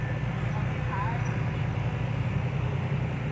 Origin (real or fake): real